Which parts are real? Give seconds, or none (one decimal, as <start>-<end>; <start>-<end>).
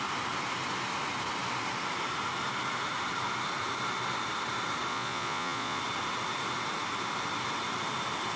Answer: 0.0-4.9; 5.8-8.4